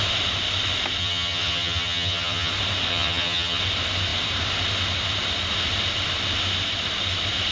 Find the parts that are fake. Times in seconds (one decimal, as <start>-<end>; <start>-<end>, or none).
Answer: 1.0-2.5; 2.9-3.6